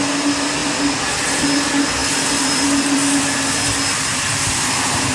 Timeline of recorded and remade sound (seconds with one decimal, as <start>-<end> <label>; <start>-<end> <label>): 0.0-2.0 recorded; 2.0-3.2 remade; 3.2-4.1 recorded; 4.1-5.1 remade